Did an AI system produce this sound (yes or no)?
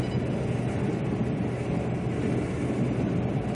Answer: no